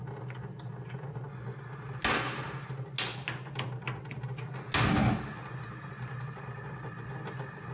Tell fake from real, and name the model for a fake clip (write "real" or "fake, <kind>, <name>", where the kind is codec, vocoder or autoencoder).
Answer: real